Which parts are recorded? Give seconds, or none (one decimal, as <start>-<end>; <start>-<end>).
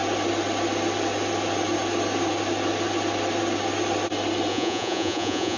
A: 0.0-4.5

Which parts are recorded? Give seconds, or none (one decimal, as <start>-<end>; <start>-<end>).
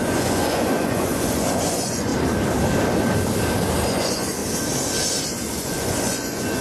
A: 2.1-3.9; 4.4-5.5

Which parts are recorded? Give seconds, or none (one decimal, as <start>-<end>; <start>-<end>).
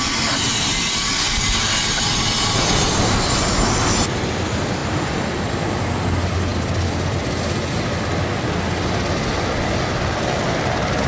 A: 0.0-11.1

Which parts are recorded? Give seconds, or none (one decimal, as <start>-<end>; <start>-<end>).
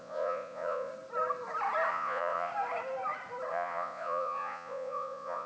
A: 0.9-1.9; 2.5-3.5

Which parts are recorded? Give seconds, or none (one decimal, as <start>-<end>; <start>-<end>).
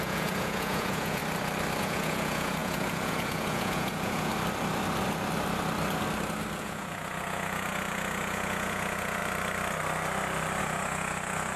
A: 1.2-1.8; 4.3-6.6; 9.2-10.6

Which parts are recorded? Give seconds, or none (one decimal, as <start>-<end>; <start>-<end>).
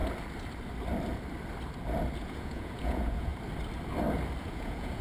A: 0.0-2.2; 3.3-4.4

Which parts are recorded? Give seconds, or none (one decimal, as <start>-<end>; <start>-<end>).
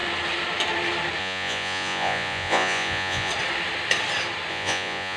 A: 0.0-1.2; 3.3-4.5